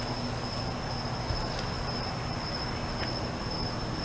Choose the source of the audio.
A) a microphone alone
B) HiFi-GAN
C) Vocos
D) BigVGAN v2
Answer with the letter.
A